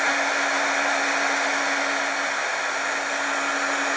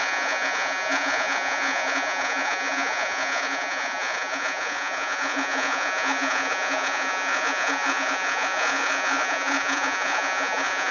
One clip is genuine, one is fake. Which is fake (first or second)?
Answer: second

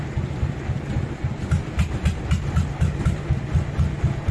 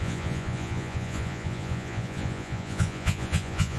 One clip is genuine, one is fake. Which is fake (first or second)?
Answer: second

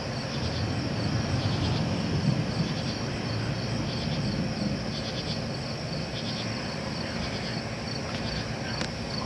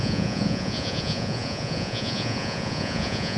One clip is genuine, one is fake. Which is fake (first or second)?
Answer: second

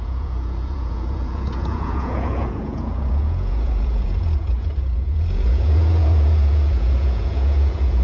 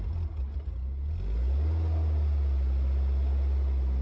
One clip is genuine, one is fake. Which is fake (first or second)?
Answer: first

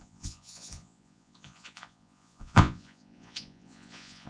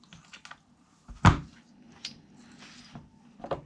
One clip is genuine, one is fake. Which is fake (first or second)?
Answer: first